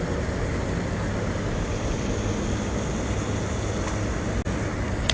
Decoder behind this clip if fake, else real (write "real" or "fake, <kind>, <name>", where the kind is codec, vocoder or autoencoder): real